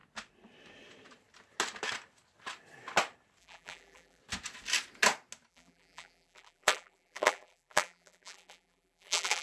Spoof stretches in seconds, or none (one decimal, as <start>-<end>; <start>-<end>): 3.4-4.2; 5.5-9.4